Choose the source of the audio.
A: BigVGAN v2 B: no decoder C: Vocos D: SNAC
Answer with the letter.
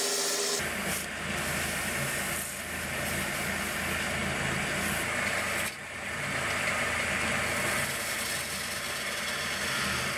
B